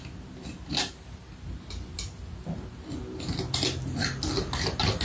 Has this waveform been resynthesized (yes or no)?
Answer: no